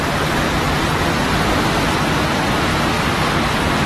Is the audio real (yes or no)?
yes